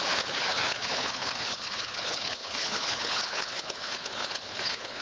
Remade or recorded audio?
remade